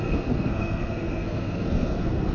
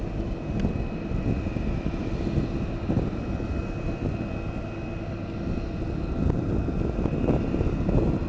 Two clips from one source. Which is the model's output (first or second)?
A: first